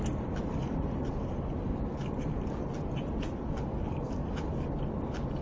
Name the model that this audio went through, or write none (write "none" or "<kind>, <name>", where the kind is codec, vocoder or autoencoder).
none